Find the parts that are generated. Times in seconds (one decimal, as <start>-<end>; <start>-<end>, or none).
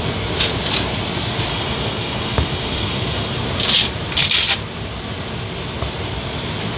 1.5-3.4